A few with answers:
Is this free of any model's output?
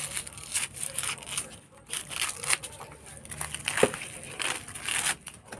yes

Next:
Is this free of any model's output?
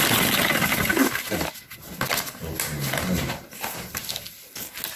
yes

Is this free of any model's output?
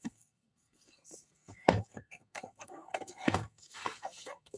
no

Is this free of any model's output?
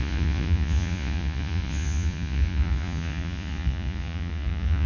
no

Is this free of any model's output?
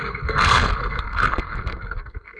no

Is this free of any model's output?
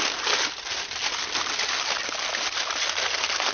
yes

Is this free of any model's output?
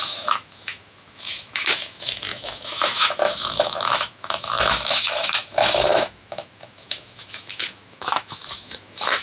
no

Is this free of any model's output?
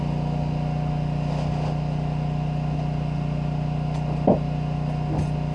yes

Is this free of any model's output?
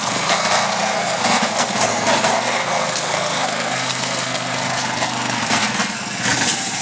no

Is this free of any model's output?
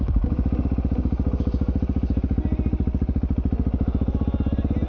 yes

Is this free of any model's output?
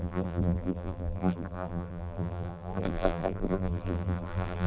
no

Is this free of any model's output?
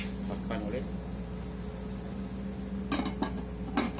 yes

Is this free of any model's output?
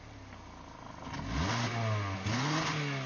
yes